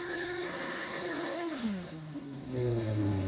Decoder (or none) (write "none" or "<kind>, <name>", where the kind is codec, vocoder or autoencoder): codec, SNAC